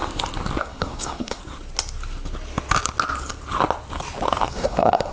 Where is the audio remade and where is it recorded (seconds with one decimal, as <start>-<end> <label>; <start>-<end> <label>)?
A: 0.0-0.6 recorded; 0.6-1.4 remade; 1.4-4.5 recorded; 4.5-5.1 remade